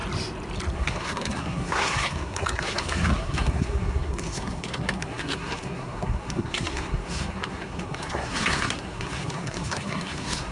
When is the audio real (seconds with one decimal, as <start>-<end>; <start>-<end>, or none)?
0.0-0.7

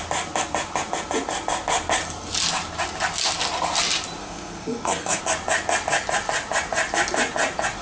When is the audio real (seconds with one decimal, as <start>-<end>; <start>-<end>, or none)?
0.0-4.2; 5.2-7.8